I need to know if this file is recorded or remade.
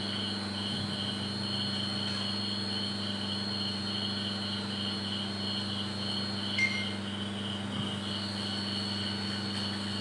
recorded